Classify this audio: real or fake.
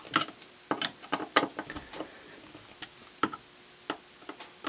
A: real